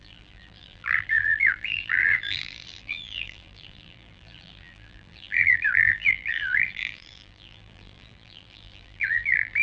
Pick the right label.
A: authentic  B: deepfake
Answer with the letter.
B